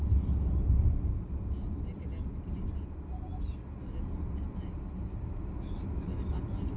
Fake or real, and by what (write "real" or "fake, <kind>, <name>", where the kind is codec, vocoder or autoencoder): real